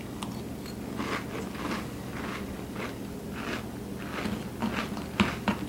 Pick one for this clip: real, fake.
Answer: real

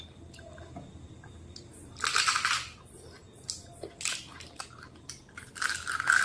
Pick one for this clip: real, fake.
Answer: fake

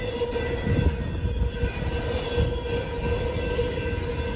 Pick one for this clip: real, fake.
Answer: real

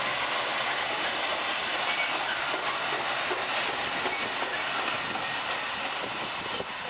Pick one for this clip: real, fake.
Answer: real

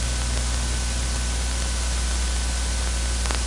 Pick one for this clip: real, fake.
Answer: real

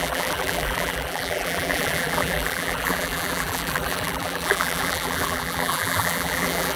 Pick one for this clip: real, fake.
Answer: fake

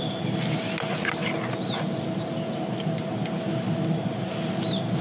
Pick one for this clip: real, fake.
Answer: real